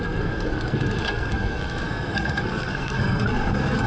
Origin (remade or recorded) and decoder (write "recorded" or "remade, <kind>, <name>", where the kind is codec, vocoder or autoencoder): remade, codec, SNAC